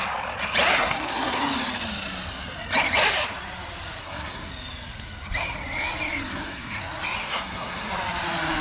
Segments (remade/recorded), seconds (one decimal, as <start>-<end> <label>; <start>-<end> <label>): 0.0-0.7 recorded; 0.7-1.4 remade; 1.4-4.0 recorded; 4.0-4.5 remade; 4.5-6.3 recorded; 6.3-6.8 remade; 6.8-7.2 recorded; 7.2-7.9 remade; 7.9-8.6 recorded